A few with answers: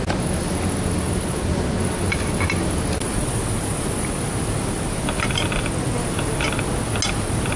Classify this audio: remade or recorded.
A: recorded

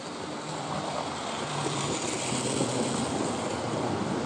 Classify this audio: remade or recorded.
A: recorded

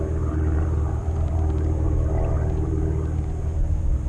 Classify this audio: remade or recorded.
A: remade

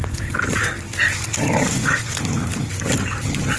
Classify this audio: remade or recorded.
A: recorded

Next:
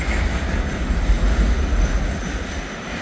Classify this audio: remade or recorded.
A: recorded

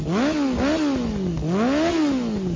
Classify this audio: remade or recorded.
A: recorded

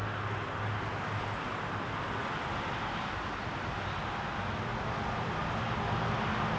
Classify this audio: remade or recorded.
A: recorded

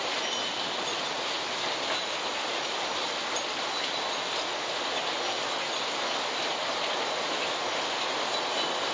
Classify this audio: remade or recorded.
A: recorded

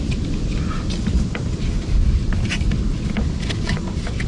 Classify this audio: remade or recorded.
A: recorded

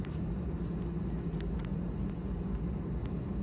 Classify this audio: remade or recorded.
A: recorded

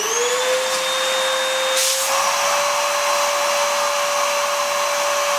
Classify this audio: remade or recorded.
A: recorded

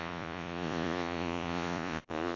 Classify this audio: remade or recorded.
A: remade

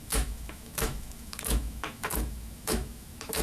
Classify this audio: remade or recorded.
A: remade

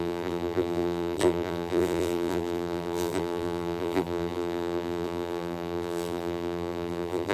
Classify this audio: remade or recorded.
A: remade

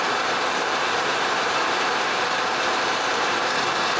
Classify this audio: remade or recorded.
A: remade